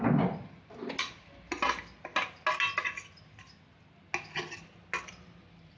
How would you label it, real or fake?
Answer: real